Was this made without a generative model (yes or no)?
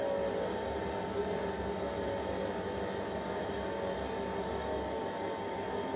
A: yes